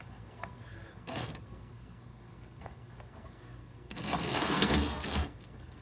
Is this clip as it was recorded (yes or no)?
no